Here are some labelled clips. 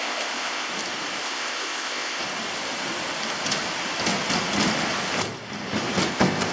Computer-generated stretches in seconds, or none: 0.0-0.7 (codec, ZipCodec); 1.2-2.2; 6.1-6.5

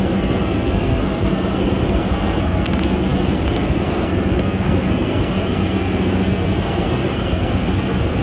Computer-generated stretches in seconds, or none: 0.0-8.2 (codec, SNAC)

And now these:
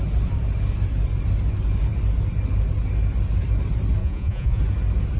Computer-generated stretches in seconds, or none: 4.0-4.6 (vocoder, Vocos)

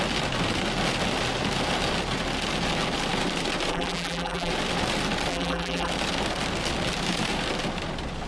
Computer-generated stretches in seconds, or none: 3.7-4.5 (vocoder, BigVGAN v2); 5.3-5.9

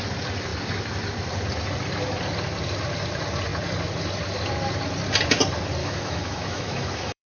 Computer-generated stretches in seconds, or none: 5.8-7.4 (autoencoder, DAC-VAE)